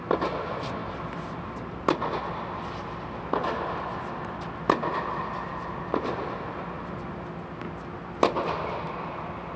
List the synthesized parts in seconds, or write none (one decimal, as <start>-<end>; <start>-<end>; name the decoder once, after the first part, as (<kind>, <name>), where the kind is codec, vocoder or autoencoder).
none